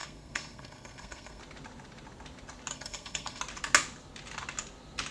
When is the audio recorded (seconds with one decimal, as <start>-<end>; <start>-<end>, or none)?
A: 1.4-2.7; 3.4-5.1